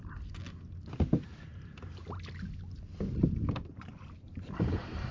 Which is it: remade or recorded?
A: recorded